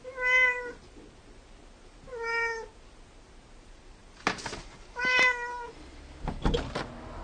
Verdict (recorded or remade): recorded